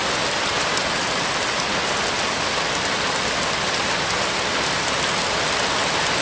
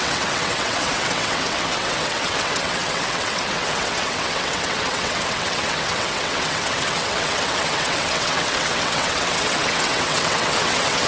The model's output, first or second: second